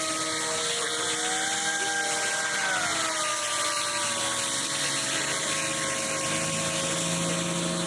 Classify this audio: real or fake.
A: real